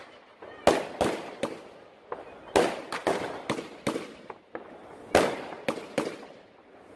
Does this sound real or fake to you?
real